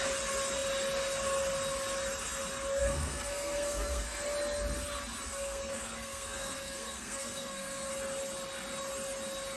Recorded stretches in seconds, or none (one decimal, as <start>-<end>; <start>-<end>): 0.0-2.8; 4.2-5.3; 7.9-9.6